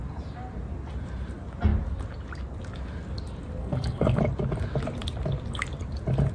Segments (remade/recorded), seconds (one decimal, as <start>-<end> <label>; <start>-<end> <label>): 0.0-3.6 recorded; 3.6-4.2 remade; 4.2-6.3 recorded